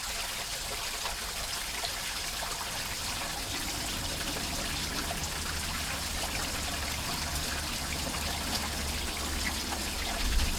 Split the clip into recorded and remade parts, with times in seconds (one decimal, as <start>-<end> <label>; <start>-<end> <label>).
0.0-10.6 recorded